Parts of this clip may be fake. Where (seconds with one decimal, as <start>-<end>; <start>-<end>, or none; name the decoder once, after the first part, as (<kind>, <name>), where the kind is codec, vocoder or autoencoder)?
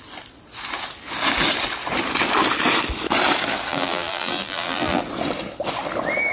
3.7-5.0 (vocoder, BigVGAN v2)